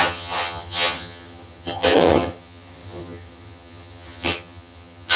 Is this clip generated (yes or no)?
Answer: yes